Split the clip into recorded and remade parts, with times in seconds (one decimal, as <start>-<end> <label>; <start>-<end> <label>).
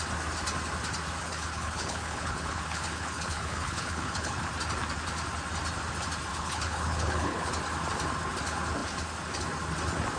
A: 0.0-1.2 recorded; 1.2-4.5 remade; 4.5-6.3 recorded; 6.3-7.5 remade; 7.5-10.2 recorded